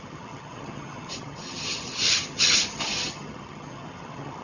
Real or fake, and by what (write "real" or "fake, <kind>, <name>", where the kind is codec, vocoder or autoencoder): fake, vocoder, HiFi-GAN